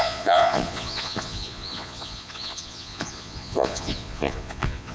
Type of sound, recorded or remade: remade